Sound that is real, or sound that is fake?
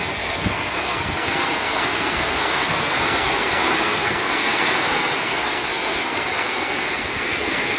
fake